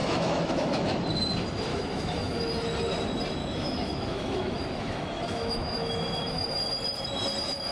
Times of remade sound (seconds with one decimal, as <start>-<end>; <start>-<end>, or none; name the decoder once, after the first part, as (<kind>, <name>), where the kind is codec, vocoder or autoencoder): 0.0-1.0 (autoencoder, DAC-VAE); 1.7-2.4; 3.4-6.6